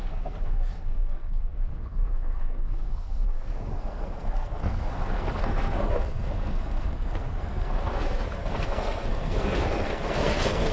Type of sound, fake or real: fake